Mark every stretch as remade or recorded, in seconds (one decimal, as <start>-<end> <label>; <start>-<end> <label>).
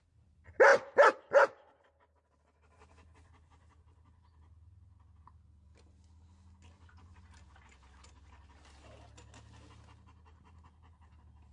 0.0-11.5 recorded